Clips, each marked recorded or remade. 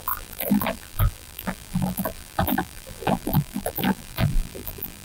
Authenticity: remade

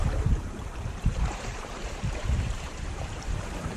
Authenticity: remade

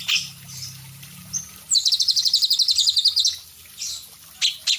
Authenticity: remade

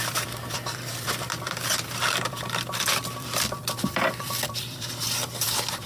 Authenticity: remade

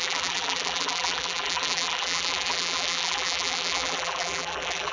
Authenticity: remade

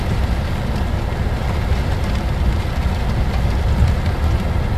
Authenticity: recorded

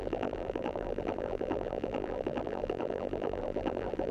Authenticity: remade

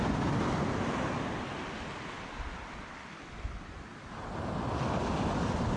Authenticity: recorded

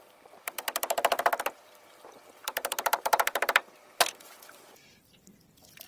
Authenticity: remade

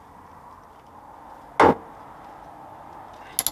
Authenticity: recorded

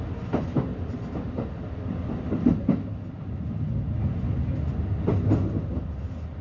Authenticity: recorded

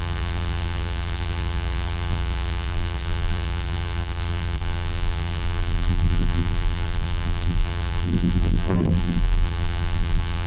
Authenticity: remade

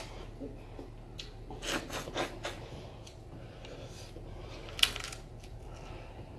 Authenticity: recorded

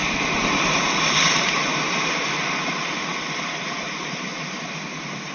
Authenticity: remade